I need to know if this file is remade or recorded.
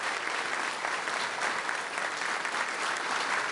recorded